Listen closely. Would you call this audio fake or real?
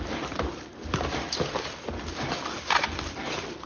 real